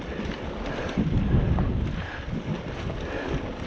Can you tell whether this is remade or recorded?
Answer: recorded